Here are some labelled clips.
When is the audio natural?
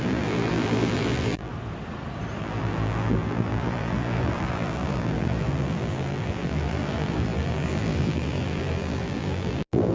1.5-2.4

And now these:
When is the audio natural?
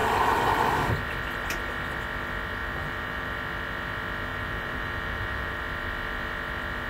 0.0-2.6; 3.3-4.3; 5.6-6.9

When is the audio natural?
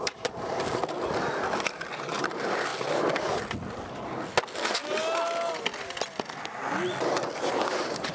0.8-2.1; 2.7-7.5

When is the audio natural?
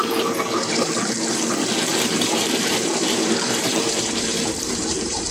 0.9-1.9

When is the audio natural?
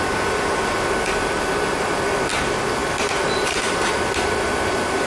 0.0-2.8